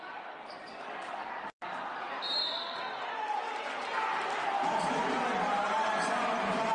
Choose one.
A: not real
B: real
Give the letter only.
B